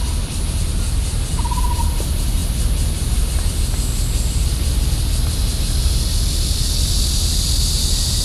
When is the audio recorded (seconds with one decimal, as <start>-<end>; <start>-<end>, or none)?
0.0-8.2